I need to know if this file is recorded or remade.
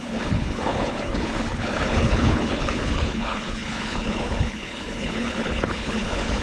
remade